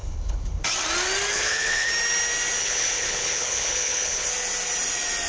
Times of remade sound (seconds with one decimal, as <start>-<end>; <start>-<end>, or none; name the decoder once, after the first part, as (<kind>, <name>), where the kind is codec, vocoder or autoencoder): 0.0-0.6 (codec, HILCodec); 1.3-1.9; 2.6-4.3